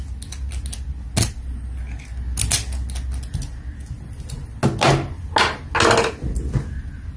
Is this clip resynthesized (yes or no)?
no